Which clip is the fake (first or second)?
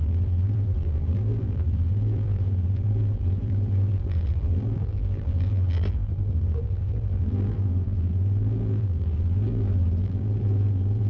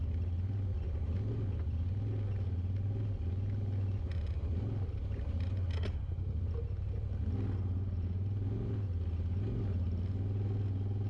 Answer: first